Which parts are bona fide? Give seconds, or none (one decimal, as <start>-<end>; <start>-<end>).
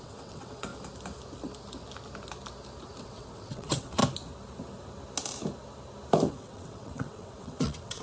0.7-3.0; 4.0-6.3